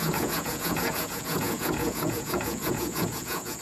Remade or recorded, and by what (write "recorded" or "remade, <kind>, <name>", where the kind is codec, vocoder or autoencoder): remade, vocoder, Vocos